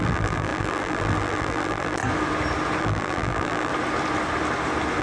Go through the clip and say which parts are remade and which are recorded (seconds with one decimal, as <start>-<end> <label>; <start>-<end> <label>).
0.0-2.0 remade; 2.0-2.8 recorded; 2.8-3.7 remade; 3.7-5.0 recorded